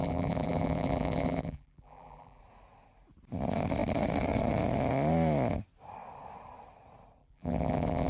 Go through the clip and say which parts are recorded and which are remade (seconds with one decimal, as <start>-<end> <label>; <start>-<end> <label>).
0.0-2.4 remade; 2.4-7.2 recorded; 7.2-8.1 remade